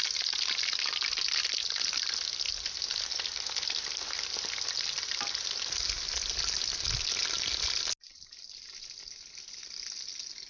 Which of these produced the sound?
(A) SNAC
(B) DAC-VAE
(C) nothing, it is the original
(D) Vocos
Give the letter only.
C